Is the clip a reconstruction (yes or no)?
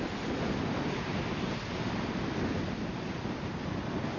no